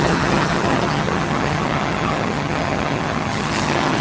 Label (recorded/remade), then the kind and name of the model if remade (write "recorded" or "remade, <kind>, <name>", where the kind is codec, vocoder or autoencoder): remade, vocoder, HiFi-GAN